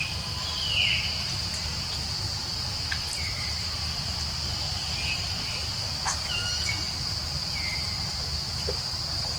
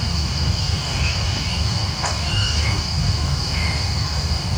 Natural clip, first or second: first